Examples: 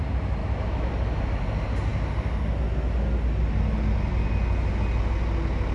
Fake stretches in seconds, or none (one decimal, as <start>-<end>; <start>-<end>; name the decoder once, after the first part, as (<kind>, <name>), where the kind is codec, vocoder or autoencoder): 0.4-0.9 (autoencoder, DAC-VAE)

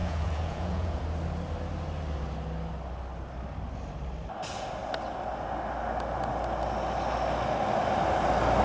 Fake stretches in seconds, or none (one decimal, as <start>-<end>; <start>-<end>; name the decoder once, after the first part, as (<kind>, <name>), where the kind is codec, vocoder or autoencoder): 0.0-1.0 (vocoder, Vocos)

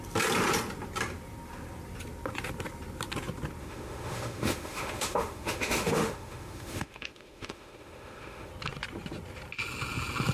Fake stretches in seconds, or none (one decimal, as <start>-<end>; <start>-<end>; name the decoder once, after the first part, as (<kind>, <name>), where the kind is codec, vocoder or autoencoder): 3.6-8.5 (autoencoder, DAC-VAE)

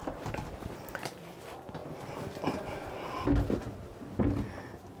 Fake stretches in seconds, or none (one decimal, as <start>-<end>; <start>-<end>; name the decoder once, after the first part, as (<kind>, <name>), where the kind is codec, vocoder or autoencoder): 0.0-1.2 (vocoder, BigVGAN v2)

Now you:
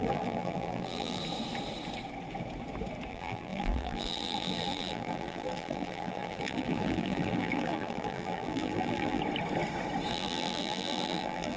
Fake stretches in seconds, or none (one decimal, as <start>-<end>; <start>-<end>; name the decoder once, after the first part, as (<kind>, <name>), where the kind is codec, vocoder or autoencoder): 0.0-1.2 (vocoder, BigVGAN v2); 3.1-9.2; 10.1-11.6

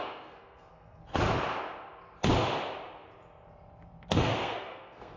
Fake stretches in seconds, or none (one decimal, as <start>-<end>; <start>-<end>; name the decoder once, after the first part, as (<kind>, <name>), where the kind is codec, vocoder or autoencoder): 0.0-1.0 (codec, SNAC); 4.1-5.2

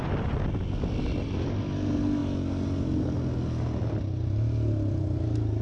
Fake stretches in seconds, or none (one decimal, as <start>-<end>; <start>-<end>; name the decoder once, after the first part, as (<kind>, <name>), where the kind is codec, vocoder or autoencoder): none

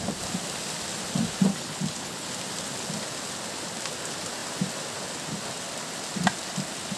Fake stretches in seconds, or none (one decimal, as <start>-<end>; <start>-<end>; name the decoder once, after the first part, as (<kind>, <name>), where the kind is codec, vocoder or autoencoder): 1.5-2.3 (codec, HILCodec)